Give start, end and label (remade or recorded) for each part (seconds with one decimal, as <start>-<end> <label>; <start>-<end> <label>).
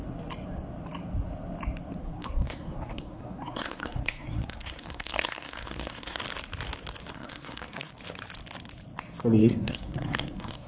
0.0-2.0 recorded; 2.0-6.2 remade; 6.2-7.1 recorded; 7.1-7.9 remade; 7.9-9.4 recorded; 9.4-10.7 remade